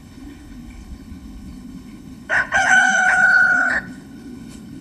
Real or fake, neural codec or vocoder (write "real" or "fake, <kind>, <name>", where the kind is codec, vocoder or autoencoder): fake, codec, HILCodec